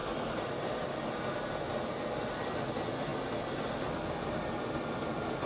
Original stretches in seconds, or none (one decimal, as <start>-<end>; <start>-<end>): 0.0-5.5